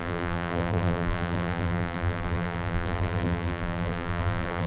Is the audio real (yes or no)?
no